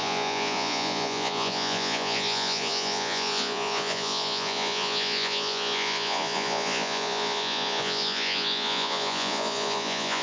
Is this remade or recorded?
remade